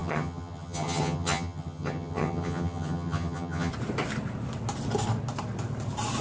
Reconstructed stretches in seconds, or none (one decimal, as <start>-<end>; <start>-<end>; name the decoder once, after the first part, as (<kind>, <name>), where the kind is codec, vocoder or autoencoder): 0.0-3.7 (vocoder, HiFi-GAN)